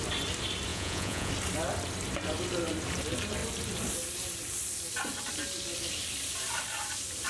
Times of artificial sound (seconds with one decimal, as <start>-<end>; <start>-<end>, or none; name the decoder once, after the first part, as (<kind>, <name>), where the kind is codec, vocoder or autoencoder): 0.7-1.3 (vocoder, Vocos)